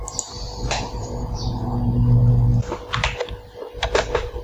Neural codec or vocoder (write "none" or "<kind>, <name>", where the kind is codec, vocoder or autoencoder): none